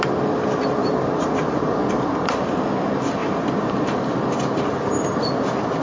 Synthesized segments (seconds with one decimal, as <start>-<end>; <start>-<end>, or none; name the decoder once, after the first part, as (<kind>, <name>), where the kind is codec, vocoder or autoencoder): 0.8-1.7 (vocoder, BigVGAN v2); 3.2-4.0